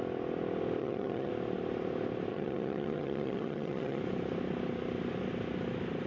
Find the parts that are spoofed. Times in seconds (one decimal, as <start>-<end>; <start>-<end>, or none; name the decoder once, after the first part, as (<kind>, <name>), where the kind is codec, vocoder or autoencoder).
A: 0.8-1.3 (vocoder, HiFi-GAN); 2.3-4.0